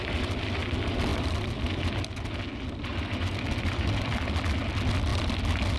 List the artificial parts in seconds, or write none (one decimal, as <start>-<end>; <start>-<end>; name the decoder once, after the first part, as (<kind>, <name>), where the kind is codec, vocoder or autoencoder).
1.1-1.7 (vocoder, BigVGAN v2); 2.9-4.2